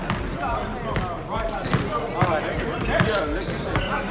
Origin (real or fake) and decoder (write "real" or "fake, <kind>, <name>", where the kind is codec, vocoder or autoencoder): real